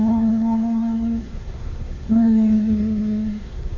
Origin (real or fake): fake